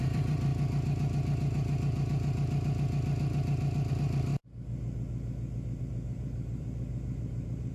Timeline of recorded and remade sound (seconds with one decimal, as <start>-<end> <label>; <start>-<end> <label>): 0.0-0.5 remade; 0.5-3.9 recorded; 3.9-4.3 remade; 4.3-5.8 recorded; 5.8-7.7 remade